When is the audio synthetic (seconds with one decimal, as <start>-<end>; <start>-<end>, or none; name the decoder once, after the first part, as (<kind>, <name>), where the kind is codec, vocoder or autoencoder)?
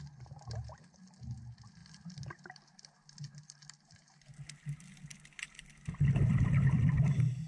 none